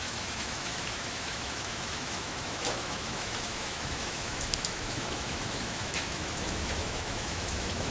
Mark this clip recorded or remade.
remade